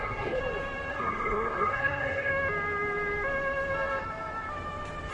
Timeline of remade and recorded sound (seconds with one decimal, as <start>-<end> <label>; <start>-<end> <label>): 0.0-0.4 remade; 0.4-0.9 recorded; 0.9-2.3 remade; 2.3-5.1 recorded